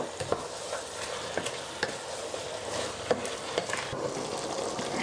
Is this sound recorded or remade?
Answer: recorded